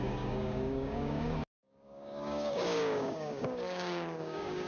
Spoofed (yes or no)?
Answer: yes